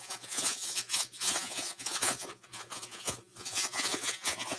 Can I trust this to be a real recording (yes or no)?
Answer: no